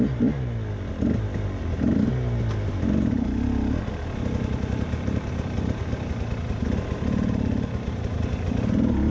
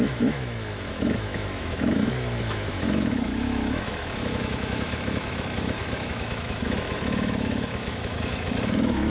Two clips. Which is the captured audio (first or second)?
first